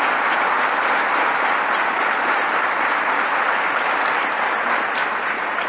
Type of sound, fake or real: real